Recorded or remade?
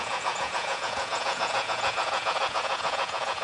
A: remade